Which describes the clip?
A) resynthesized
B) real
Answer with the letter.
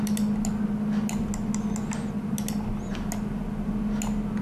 B